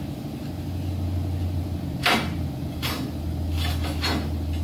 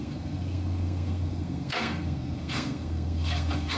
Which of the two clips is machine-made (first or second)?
second